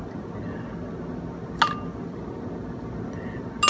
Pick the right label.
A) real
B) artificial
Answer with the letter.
A